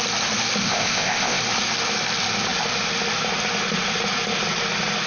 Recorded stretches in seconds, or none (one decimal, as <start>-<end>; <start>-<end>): 0.0-0.6; 1.4-5.1